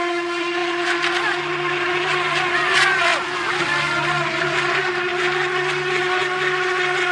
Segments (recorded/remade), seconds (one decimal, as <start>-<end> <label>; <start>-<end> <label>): 0.0-3.1 recorded; 3.1-4.6 remade; 4.6-7.1 recorded